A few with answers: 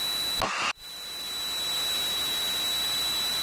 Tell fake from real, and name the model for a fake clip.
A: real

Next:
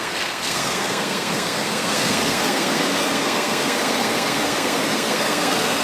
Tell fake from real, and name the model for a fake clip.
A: fake, codec, SNAC